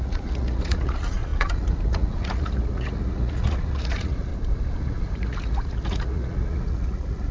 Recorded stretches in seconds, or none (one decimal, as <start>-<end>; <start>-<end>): 4.3-4.8